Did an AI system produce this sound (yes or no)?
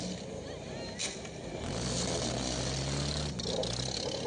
no